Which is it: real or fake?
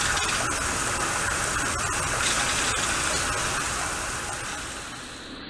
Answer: real